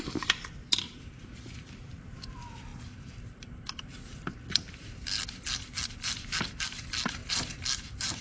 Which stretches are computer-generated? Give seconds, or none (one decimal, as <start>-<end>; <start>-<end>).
0.0-8.2

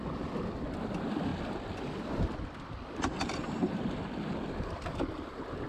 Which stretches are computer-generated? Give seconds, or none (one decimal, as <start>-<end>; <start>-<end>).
none